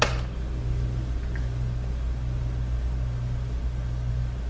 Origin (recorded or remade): recorded